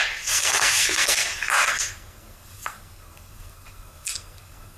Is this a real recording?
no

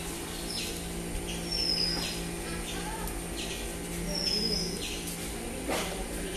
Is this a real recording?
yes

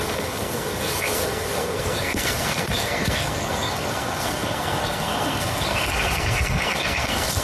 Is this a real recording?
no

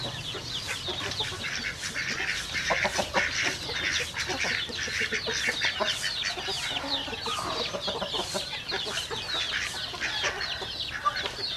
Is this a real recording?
yes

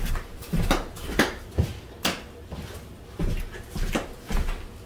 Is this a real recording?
yes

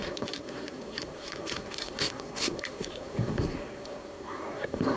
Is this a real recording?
no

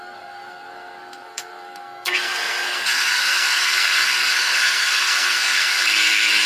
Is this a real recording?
no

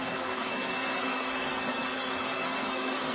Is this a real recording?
no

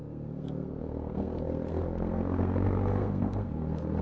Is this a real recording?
no